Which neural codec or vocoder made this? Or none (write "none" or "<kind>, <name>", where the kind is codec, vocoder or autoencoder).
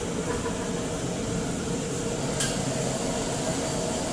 none